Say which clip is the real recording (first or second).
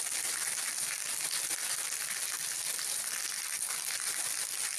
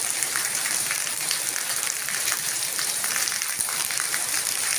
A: first